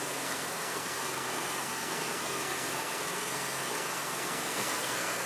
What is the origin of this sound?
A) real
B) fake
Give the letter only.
B